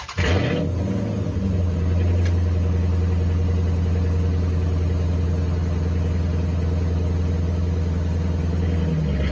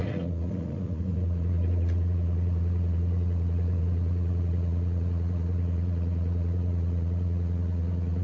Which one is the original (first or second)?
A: first